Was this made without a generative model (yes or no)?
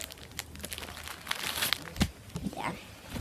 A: yes